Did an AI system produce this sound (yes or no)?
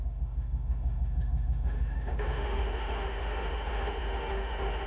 yes